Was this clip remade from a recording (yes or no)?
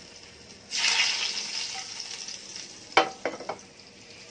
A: no